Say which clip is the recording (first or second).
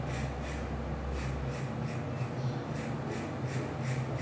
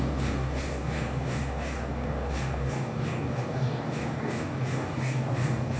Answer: first